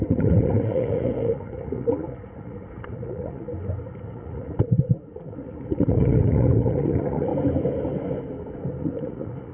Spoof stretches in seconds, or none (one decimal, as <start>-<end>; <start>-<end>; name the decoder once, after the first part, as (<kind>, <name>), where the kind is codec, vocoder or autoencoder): 0.0-3.5 (vocoder, Vocos); 4.0-7.3; 8.8-9.5